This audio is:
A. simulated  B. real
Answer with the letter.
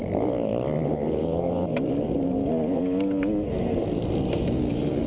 B